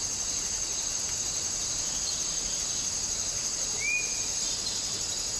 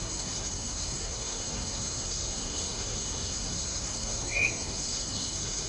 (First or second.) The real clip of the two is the first